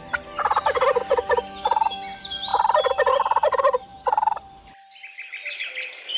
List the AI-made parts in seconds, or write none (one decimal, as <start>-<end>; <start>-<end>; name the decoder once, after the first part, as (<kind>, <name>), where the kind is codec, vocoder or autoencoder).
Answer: none

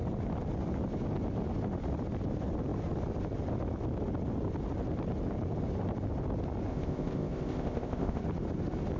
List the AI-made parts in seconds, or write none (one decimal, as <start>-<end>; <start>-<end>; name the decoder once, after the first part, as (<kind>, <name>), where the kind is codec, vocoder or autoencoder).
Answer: 6.7-8.2 (codec, ZipCodec)

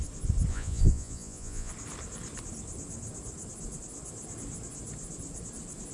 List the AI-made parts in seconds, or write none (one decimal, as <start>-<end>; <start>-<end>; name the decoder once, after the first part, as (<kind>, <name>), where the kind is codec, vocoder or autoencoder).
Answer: 0.5-1.7 (vocoder, Vocos)

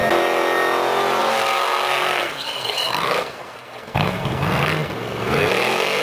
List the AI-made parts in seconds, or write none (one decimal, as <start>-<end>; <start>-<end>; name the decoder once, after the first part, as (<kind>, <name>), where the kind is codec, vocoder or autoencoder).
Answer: 1.2-6.0 (codec, SNAC)

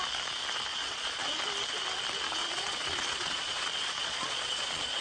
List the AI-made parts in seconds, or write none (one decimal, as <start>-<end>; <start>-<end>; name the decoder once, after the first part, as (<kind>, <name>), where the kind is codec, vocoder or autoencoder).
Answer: 0.7-1.4 (vocoder, Vocos); 2.4-5.0

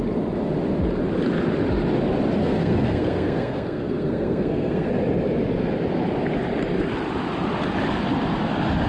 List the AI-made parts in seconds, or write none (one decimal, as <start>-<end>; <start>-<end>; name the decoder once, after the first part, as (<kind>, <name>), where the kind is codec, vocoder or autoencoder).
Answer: 2.4-4.9 (codec, SNAC)

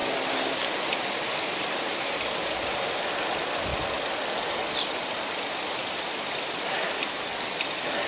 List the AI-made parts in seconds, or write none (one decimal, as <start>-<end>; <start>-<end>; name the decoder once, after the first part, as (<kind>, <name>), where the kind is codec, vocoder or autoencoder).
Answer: none